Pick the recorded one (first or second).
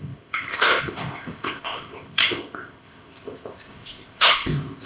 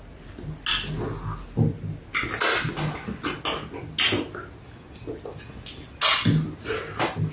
second